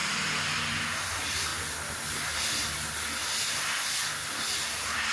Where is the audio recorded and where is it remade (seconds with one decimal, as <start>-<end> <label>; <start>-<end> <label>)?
0.0-5.1 recorded